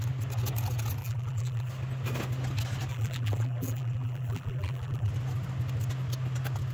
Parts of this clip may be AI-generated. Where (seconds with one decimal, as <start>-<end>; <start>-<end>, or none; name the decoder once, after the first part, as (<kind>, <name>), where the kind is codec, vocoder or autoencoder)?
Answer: 1.0-1.7 (vocoder, BigVGAN v2); 2.9-5.1